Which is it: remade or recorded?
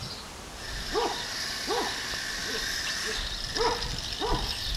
recorded